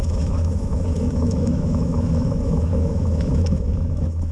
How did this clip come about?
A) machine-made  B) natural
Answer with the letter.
A